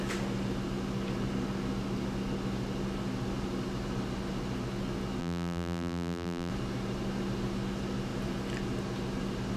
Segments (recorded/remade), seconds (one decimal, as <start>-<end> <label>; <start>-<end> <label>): 0.0-5.2 recorded; 5.2-6.5 remade; 6.5-9.6 recorded

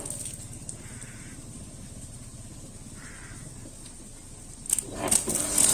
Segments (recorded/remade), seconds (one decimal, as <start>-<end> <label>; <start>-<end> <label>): 0.0-5.7 recorded

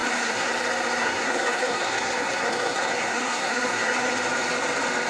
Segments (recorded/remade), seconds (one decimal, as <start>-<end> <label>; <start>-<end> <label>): 0.0-0.5 remade; 0.5-1.0 recorded; 1.0-4.1 remade; 4.1-5.1 recorded

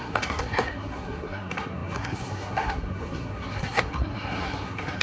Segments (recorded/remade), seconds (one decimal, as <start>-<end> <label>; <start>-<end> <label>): 0.0-5.0 remade

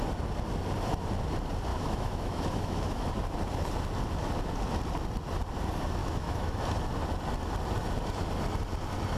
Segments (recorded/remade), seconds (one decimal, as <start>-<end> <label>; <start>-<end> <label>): 0.0-1.7 recorded; 1.7-3.1 remade; 3.1-6.0 recorded; 6.0-6.6 remade; 6.6-9.2 recorded

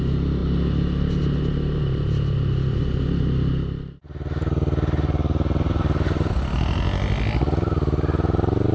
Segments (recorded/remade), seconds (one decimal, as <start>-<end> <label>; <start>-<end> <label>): 0.0-8.7 recorded

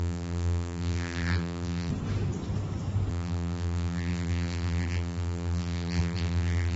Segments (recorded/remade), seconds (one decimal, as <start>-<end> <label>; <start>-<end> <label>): 0.0-1.9 remade; 1.9-3.1 recorded; 3.1-6.8 remade

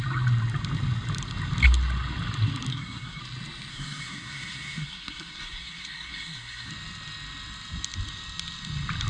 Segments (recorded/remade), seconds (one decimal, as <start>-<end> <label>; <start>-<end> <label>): 0.0-2.7 recorded; 2.7-3.2 remade; 3.2-3.7 recorded; 3.7-6.7 remade; 6.7-9.1 recorded